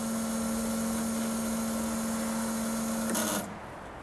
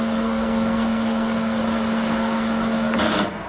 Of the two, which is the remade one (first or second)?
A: second